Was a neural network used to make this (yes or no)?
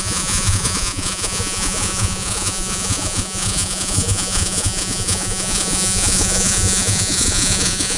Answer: yes